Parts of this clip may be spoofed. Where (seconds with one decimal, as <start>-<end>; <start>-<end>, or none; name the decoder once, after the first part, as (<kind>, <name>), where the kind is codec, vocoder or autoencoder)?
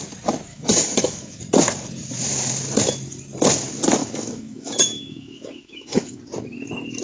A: 0.5-1.4 (autoencoder, DAC-VAE); 4.0-6.2